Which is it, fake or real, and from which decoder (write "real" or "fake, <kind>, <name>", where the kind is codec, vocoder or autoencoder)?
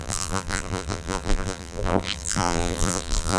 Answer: fake, vocoder, BigVGAN v2